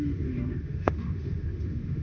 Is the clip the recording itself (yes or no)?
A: no